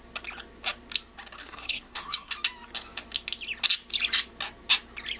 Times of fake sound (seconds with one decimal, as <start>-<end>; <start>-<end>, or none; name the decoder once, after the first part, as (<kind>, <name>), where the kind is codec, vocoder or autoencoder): 1.4-2.3 (codec, SNAC)